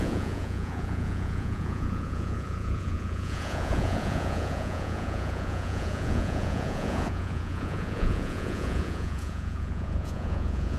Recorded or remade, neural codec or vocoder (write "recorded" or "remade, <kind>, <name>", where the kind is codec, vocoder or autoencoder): remade, vocoder, Vocos